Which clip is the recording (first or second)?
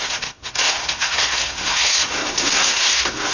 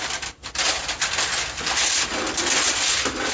second